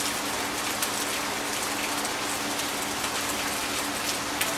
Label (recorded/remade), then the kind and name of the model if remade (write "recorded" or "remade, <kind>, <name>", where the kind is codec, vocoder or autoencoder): recorded